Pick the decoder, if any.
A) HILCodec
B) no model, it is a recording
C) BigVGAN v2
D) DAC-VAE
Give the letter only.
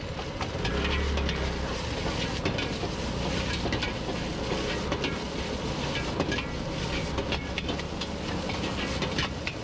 B